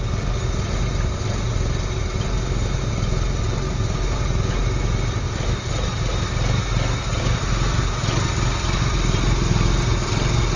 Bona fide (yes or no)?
yes